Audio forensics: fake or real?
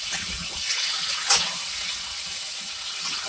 fake